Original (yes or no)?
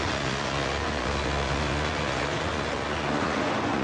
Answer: no